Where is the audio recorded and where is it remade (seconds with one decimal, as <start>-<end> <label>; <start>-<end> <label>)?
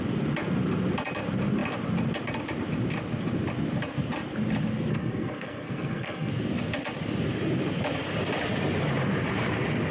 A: 0.0-4.9 recorded; 4.9-6.3 remade; 6.3-9.9 recorded